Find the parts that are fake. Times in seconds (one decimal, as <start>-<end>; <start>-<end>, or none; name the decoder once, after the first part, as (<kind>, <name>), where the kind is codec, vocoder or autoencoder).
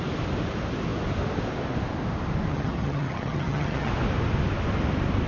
2.5-3.9 (vocoder, HiFi-GAN)